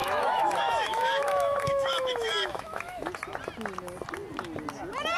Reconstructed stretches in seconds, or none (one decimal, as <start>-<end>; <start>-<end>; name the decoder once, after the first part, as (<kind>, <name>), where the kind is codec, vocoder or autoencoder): 0.0-3.1 (autoencoder, DAC-VAE)